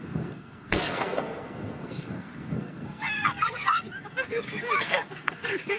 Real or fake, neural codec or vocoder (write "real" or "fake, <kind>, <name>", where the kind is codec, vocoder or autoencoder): fake, codec, SNAC